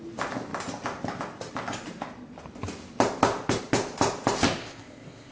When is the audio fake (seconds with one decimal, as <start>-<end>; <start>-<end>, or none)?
4.6-5.3